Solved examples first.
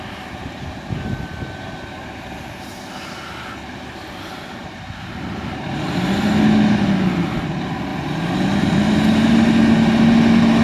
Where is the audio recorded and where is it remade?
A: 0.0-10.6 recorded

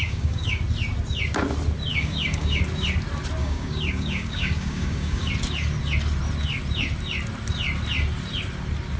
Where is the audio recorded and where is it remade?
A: 0.0-0.6 remade; 0.6-1.9 recorded; 1.9-2.6 remade; 2.6-3.4 recorded; 3.4-5.3 remade; 5.3-9.0 recorded